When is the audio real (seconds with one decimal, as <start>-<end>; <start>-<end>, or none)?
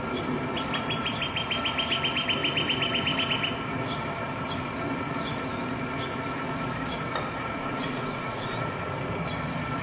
0.0-7.6; 8.6-9.8